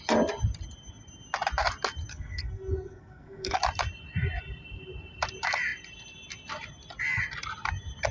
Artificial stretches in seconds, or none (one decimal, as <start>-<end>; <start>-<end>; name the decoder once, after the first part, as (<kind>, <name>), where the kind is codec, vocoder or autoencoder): 2.1-3.6 (codec, SNAC)